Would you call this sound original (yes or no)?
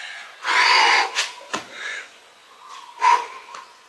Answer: no